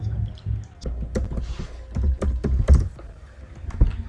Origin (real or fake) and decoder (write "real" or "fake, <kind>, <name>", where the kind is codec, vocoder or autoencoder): real